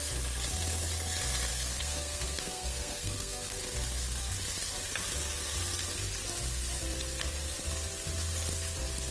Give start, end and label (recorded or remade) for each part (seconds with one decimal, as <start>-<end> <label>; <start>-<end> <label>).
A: 0.0-1.5 recorded; 1.5-3.6 remade; 3.6-9.1 recorded